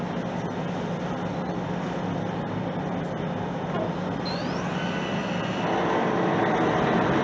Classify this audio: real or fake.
real